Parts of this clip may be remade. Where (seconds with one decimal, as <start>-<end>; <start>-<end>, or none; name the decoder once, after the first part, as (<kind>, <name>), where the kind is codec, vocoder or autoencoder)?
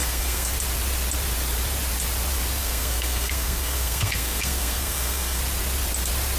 0.0-0.5 (codec, SNAC); 2.6-5.4